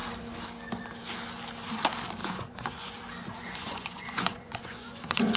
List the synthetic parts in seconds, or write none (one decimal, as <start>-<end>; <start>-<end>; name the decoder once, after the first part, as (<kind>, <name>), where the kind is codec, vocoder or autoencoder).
2.2-2.9 (vocoder, Vocos); 3.4-5.4